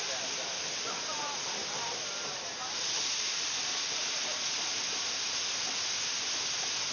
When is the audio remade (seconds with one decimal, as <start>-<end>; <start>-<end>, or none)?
none